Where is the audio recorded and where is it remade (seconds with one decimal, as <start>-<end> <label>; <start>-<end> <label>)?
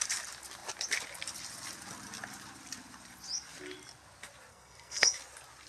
0.0-4.5 recorded; 4.5-5.2 remade; 5.2-5.7 recorded